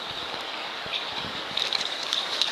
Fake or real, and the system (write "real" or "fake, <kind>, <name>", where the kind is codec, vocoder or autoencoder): fake, codec, DAC